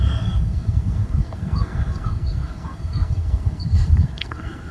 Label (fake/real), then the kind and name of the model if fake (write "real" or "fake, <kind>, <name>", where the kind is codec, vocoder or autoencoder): fake, codec, SNAC